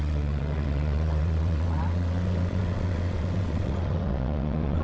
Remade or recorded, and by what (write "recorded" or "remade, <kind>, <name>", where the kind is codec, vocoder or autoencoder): remade, vocoder, WaveNeXt